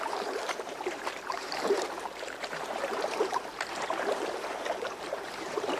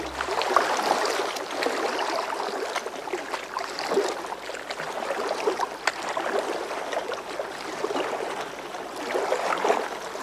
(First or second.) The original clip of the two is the second